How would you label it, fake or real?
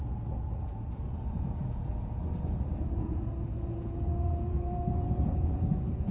fake